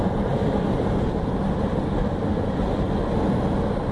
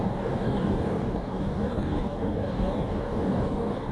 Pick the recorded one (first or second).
first